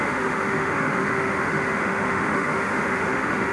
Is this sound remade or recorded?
remade